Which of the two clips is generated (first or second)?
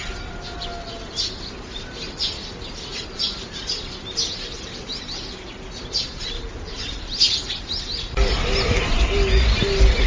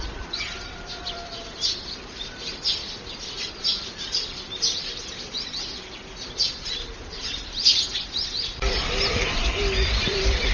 second